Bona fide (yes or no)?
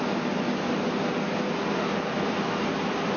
yes